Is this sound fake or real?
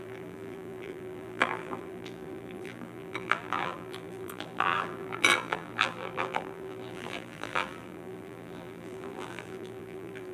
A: fake